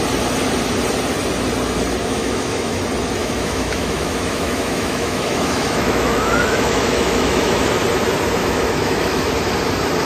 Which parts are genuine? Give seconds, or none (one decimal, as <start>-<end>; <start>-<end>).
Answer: 0.0-2.0; 2.8-3.2; 7.6-8.4; 9.3-10.1